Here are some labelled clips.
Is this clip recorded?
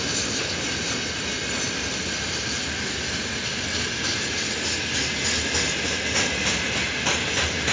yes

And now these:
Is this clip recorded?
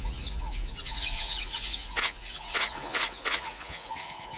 no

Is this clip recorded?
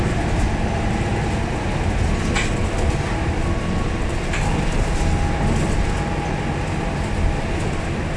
yes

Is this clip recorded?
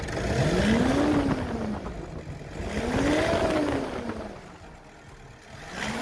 yes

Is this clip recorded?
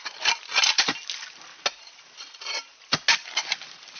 yes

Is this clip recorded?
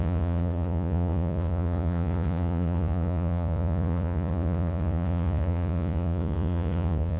no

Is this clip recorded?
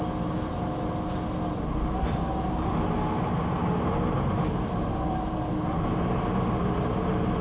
yes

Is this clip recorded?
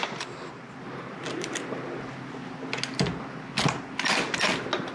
yes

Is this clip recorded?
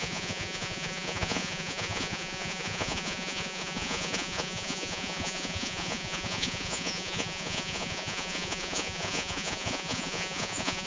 no